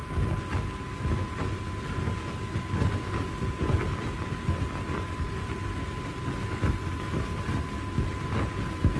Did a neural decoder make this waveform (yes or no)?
no